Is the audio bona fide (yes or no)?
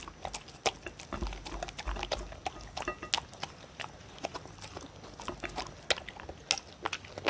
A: yes